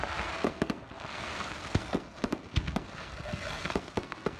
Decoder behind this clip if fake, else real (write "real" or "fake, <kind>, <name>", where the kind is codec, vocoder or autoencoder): fake, codec, SNAC